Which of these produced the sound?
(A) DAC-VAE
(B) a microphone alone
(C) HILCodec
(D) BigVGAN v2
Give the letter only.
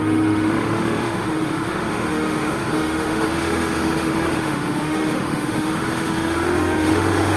A